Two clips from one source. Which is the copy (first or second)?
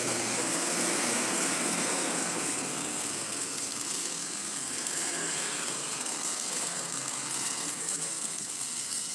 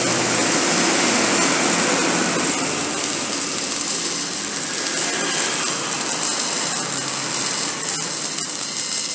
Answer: first